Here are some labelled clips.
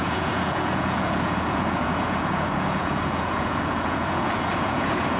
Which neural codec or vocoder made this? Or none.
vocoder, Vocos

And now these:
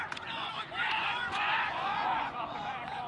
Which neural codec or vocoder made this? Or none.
vocoder, Vocos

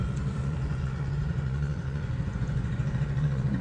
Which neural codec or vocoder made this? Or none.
vocoder, Vocos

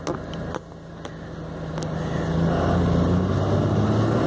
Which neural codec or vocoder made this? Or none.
none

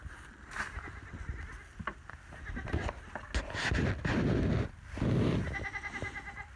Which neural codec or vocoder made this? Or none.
none